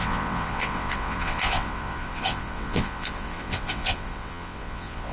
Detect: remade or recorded remade